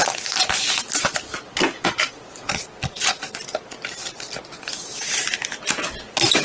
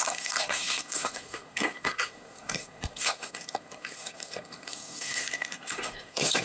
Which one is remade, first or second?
second